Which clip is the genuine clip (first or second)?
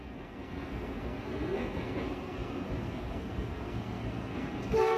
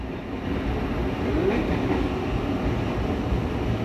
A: second